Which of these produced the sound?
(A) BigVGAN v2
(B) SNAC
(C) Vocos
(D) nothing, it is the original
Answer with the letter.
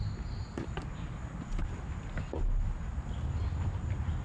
D